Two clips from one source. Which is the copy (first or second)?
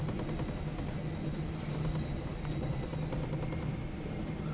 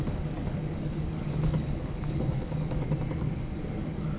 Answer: second